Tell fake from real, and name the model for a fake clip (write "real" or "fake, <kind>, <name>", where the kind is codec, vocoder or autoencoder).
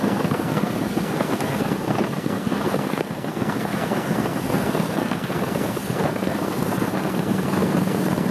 fake, codec, SNAC